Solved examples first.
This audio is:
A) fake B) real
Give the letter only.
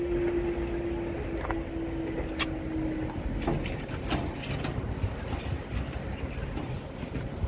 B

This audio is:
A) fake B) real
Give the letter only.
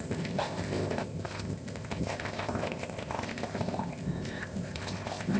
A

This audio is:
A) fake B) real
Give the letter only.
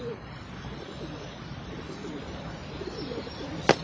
A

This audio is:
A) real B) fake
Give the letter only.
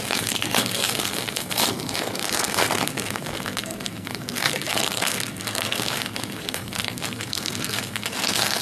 B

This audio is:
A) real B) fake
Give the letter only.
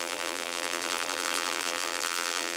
B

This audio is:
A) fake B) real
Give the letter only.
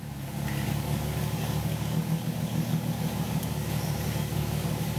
A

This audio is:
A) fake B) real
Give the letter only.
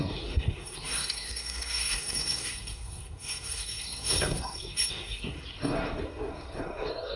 A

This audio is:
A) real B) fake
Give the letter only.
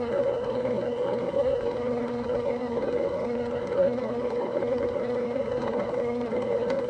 B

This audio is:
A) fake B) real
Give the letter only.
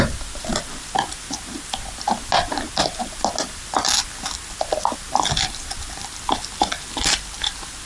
B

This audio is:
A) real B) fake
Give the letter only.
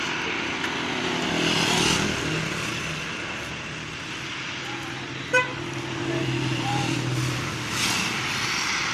A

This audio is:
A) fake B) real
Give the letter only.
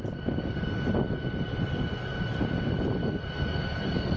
B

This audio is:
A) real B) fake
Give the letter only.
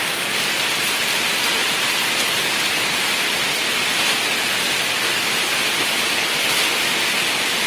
A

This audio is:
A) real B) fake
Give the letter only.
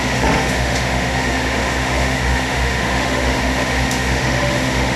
B